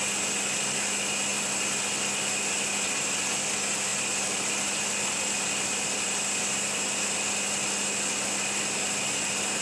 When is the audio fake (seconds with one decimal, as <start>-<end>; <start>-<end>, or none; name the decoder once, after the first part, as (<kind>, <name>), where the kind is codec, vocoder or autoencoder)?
none